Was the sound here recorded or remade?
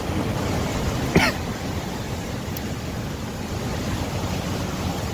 recorded